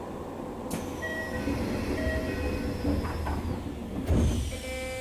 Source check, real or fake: real